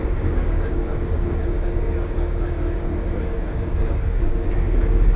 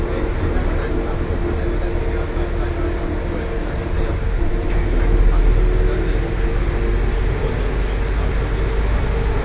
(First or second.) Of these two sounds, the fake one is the first